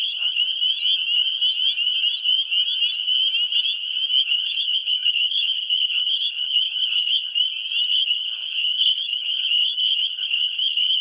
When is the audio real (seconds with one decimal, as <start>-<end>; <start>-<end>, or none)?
0.4-4.2; 7.3-7.9